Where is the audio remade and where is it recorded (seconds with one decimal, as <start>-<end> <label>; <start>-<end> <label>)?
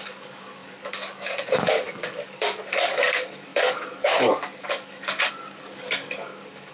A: 0.0-6.7 remade